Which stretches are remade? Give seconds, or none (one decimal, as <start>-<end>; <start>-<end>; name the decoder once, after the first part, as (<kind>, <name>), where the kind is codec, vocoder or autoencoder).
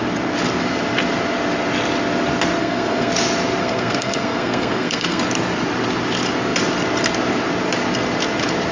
2.6-3.1 (codec, SNAC); 3.6-5.2